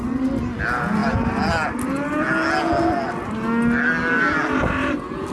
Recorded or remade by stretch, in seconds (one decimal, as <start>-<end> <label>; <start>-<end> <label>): 0.0-5.3 recorded